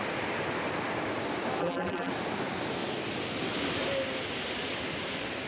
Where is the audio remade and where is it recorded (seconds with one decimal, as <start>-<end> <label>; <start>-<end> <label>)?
0.0-1.6 recorded; 1.6-2.1 remade; 2.1-5.5 recorded